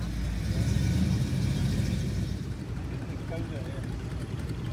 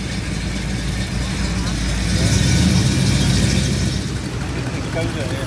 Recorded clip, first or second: second